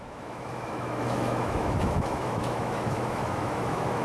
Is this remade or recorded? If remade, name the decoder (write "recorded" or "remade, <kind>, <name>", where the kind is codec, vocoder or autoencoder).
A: remade, autoencoder, DAC-VAE